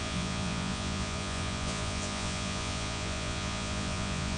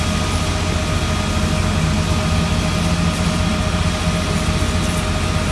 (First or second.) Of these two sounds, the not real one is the first